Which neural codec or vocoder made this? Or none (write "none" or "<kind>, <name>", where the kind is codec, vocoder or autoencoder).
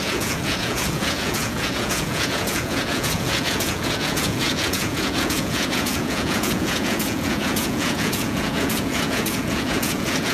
vocoder, Vocos